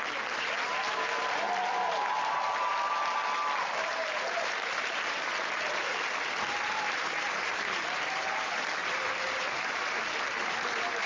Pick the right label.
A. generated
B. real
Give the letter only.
A